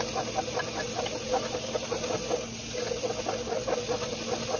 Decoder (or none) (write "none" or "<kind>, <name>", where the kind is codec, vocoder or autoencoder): none